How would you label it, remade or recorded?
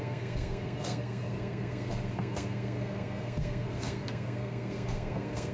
remade